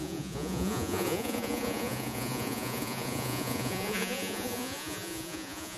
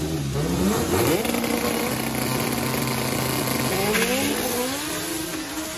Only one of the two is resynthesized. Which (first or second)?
first